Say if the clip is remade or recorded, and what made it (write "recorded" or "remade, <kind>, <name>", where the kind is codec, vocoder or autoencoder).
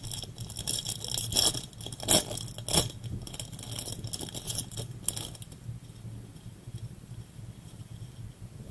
recorded